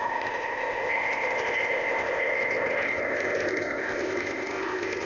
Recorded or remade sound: remade